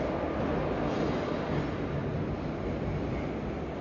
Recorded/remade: recorded